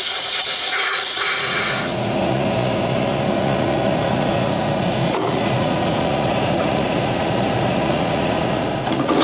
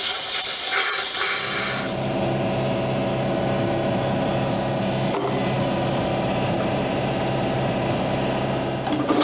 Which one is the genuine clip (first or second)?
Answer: second